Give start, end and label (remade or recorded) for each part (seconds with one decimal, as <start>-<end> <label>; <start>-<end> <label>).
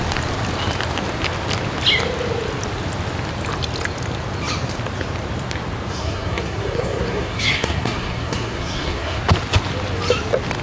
0.0-5.9 recorded; 5.9-9.2 remade; 9.2-10.6 recorded